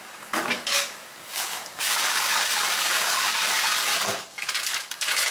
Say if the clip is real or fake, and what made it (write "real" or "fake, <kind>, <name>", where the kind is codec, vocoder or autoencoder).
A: fake, codec, DAC